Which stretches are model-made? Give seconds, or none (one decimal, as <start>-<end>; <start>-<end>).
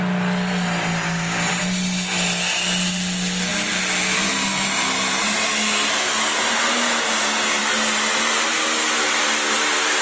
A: none